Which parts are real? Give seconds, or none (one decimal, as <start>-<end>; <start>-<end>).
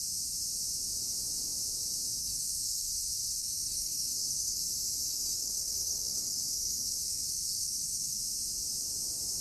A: 0.0-2.2; 2.9-3.4; 4.6-5.1; 8.2-9.4